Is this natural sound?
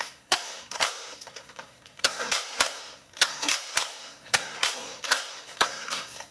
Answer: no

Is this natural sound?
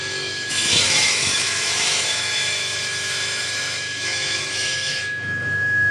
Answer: no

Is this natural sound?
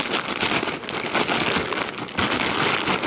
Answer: yes